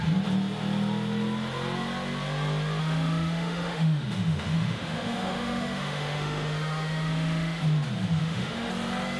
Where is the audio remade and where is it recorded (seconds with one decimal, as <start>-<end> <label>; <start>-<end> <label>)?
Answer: 0.0-2.8 recorded; 2.8-7.6 remade; 7.6-8.2 recorded; 8.2-8.7 remade; 8.7-9.2 recorded